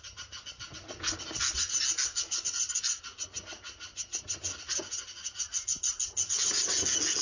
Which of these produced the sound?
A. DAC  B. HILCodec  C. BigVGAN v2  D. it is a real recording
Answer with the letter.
D